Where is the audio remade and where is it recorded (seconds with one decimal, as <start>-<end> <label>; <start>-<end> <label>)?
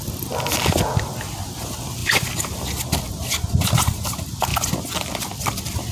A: 0.0-4.5 remade; 4.5-5.2 recorded; 5.2-5.9 remade